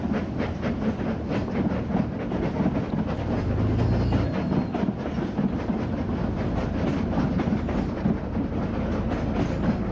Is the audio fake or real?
real